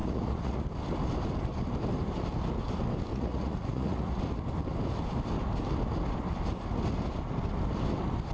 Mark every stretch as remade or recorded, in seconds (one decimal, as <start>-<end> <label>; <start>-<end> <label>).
0.0-0.6 remade; 0.6-3.1 recorded; 3.1-4.2 remade; 4.2-8.3 recorded